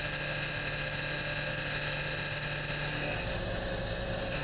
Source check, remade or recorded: recorded